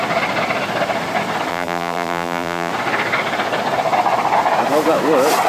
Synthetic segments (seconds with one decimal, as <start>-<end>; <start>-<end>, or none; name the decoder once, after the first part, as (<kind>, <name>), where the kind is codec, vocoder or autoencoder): 1.5-2.7 (vocoder, BigVGAN v2)